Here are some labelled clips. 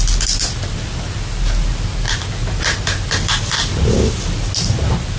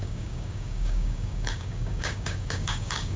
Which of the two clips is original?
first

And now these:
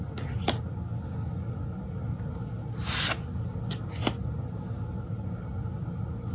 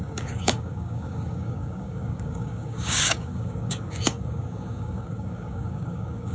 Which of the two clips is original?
first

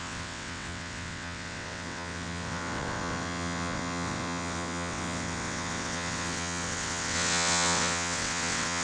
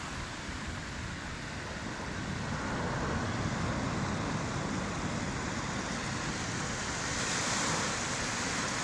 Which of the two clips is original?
second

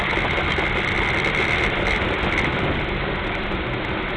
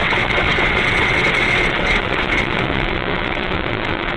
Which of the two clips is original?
first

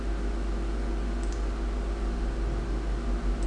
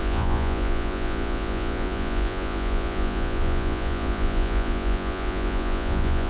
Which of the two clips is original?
first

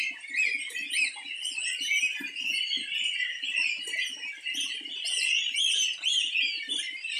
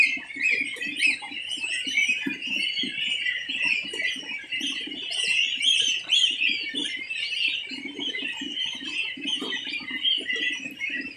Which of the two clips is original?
first